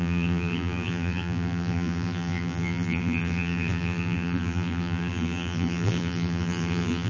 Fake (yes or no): yes